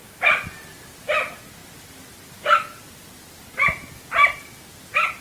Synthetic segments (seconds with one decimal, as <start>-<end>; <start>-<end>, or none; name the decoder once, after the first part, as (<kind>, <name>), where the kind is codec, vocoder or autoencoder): 0.0-0.7 (vocoder, BigVGAN v2)